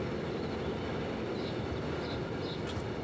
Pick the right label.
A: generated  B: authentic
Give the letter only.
B